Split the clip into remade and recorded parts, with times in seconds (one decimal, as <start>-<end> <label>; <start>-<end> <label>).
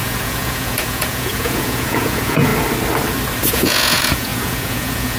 0.0-2.5 remade; 2.5-3.5 recorded; 3.5-5.2 remade